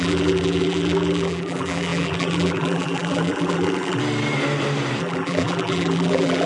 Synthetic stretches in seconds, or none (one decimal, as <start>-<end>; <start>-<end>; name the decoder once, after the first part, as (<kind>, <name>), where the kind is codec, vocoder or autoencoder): 0.0-4.0 (vocoder, BigVGAN v2); 5.0-6.5